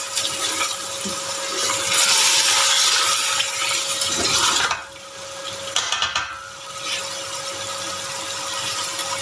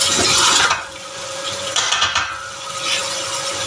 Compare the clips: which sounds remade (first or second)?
second